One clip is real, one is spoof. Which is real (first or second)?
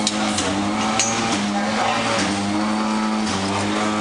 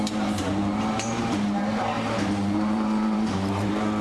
first